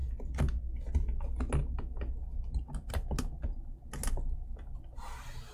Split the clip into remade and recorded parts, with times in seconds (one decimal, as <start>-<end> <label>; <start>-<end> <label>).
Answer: 0.0-5.5 recorded